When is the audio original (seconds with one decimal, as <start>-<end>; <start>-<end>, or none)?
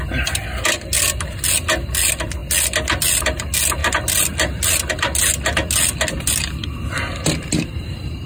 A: 0.0-8.3